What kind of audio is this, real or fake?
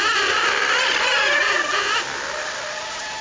real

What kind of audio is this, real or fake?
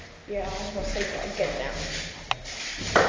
real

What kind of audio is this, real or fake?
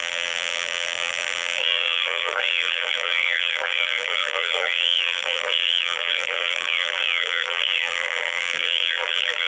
fake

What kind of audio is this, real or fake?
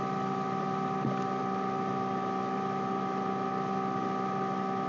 real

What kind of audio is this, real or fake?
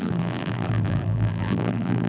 fake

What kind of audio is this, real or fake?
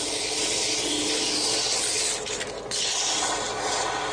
real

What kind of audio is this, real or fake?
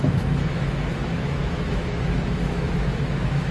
fake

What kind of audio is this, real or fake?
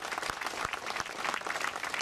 real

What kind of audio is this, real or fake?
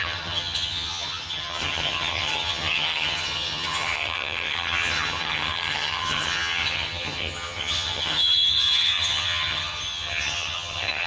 fake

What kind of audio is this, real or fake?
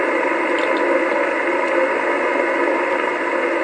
real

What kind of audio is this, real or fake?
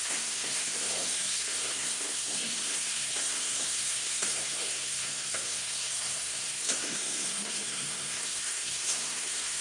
fake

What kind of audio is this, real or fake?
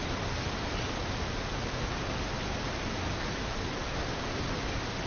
real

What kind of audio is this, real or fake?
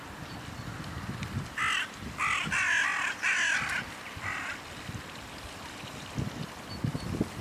real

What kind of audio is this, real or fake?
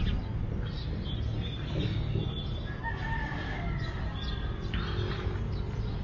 real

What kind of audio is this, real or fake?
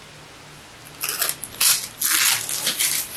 real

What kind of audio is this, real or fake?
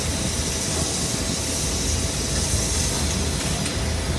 real